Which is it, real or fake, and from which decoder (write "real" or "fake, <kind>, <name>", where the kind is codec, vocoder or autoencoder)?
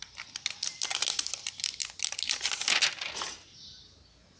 real